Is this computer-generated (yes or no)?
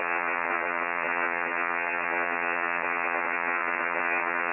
yes